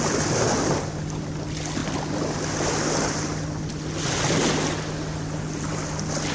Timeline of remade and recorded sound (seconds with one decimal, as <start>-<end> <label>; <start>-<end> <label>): 0.0-6.3 recorded